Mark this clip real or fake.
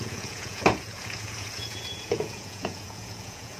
fake